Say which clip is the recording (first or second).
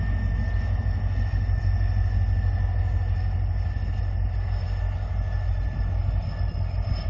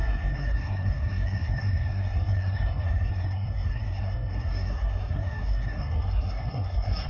first